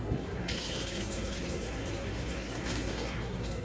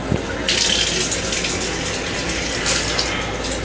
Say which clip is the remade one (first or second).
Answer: first